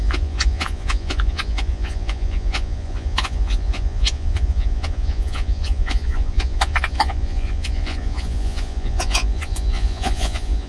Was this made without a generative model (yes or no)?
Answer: no